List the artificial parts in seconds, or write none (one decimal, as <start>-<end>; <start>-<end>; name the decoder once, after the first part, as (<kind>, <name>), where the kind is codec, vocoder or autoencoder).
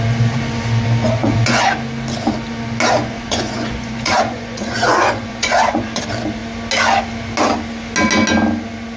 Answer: 1.2-1.7 (vocoder, Vocos); 3.0-6.0